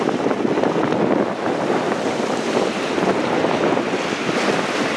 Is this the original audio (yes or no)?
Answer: yes